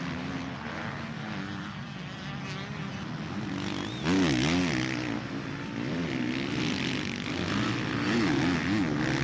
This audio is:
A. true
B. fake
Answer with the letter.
A